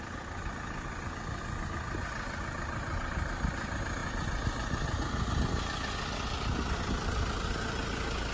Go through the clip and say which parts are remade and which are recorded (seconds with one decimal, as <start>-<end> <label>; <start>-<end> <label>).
0.0-8.3 recorded